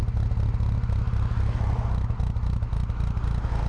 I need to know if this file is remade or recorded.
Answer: recorded